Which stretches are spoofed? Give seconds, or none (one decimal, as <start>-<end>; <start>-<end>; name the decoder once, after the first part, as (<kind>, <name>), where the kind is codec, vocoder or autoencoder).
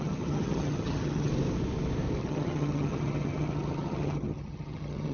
0.0-1.3 (vocoder, HiFi-GAN); 2.2-5.1